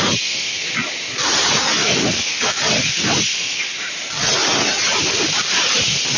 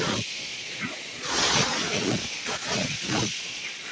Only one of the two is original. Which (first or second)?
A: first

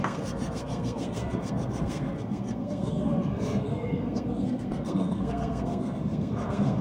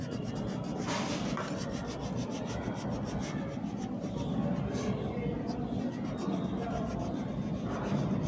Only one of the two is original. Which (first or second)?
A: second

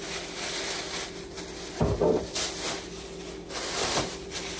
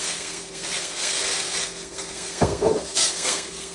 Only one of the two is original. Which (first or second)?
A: first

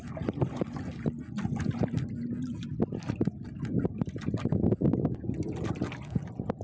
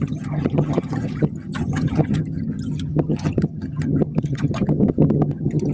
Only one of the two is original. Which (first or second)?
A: first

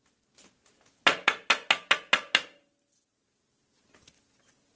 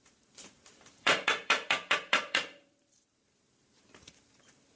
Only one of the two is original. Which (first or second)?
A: first